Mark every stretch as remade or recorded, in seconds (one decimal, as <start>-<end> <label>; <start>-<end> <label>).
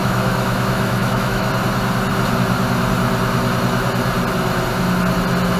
0.0-1.5 remade; 1.5-5.6 recorded